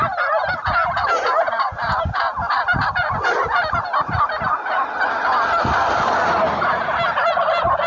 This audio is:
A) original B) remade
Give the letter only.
A